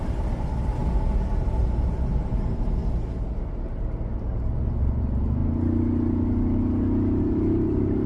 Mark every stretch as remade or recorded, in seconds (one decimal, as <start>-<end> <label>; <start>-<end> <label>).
0.0-0.8 remade; 0.8-1.9 recorded; 1.9-2.8 remade; 2.8-5.0 recorded; 5.0-5.4 remade; 5.4-7.2 recorded; 7.2-8.1 remade